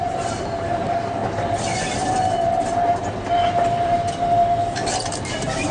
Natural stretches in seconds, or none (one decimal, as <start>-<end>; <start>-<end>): 1.2-4.6